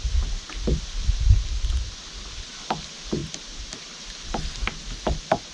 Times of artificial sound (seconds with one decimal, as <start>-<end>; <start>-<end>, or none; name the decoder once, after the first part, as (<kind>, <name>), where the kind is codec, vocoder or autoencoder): 3.2-4.0 (vocoder, BigVGAN v2)